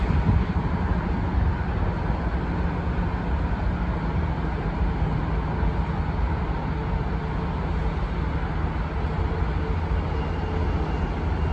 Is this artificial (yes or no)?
no